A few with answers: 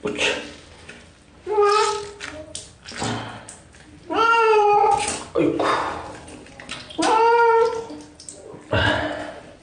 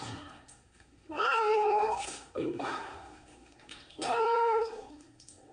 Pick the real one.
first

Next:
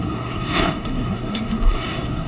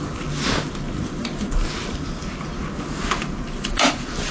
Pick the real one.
second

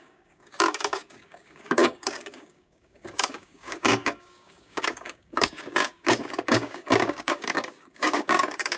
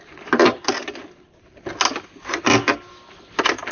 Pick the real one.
second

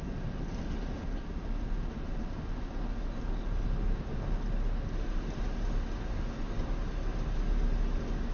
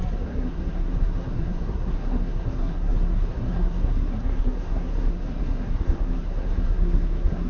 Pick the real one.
first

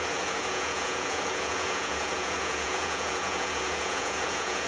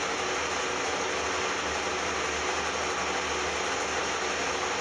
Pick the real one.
second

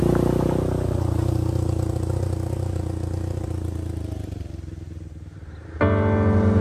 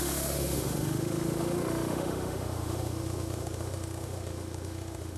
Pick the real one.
first